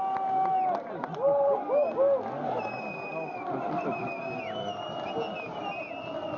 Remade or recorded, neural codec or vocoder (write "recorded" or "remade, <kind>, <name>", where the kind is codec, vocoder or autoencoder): recorded